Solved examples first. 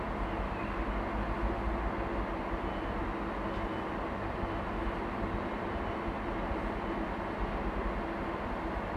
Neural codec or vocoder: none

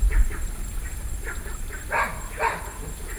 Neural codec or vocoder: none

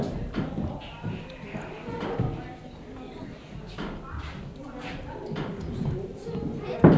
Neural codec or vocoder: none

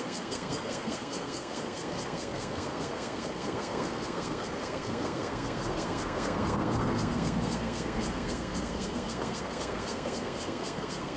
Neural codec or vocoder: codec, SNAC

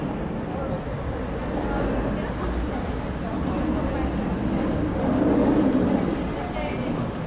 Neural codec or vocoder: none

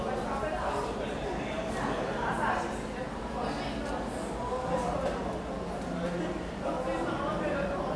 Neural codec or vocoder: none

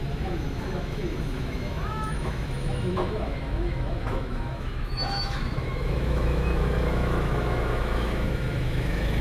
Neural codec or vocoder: autoencoder, DAC-VAE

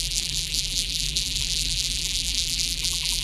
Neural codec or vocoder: vocoder, BigVGAN v2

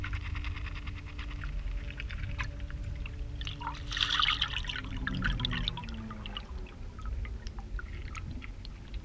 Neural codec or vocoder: none